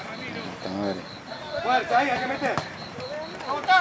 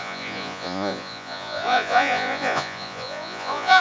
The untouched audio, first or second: first